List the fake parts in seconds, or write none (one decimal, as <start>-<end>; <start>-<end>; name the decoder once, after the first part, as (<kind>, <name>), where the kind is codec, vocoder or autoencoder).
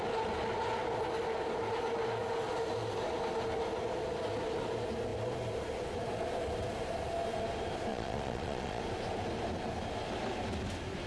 7.9-8.8 (vocoder, Vocos)